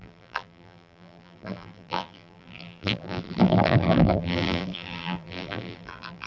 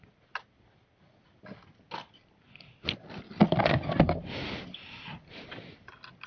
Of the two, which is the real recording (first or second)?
second